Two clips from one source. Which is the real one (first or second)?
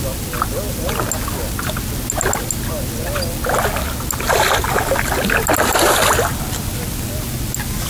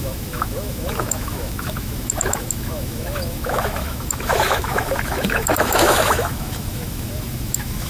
first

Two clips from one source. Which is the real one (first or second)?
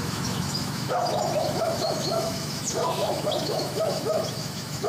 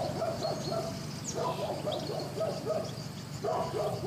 second